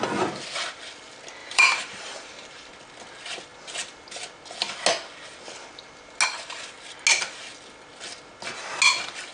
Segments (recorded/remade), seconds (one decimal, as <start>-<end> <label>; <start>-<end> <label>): 0.0-1.4 recorded; 1.4-2.7 remade; 2.7-9.3 recorded